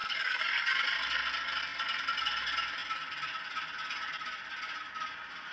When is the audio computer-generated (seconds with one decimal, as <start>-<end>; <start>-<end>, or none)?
0.0-0.8